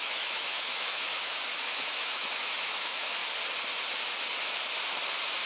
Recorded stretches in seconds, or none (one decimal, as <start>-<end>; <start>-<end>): 3.2-5.5